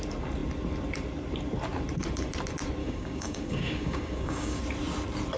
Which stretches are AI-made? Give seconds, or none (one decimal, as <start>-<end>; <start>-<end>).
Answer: 2.8-4.6